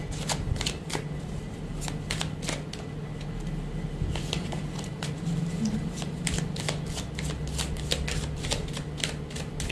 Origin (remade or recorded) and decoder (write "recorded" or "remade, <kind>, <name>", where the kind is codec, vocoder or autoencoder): recorded